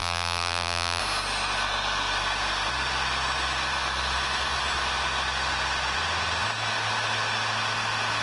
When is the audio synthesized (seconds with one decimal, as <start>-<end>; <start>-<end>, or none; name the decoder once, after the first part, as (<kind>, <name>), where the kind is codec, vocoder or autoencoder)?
0.0-1.0 (vocoder, BigVGAN v2)